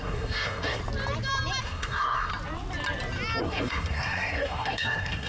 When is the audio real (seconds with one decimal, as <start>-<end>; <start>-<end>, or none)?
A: 0.8-1.6; 2.3-3.4